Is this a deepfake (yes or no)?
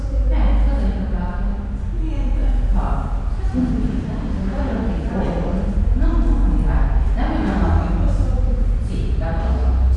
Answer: no